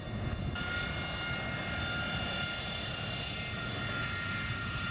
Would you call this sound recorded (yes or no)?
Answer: yes